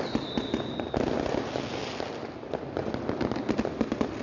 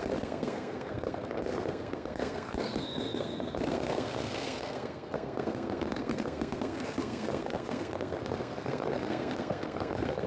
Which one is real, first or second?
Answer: first